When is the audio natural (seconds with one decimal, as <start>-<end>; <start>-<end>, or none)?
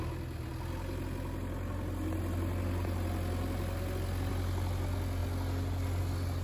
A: 0.0-6.4